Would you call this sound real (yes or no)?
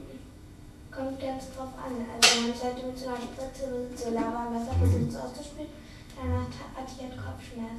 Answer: no